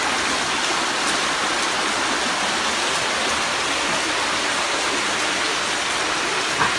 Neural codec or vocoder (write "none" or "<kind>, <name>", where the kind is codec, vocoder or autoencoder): none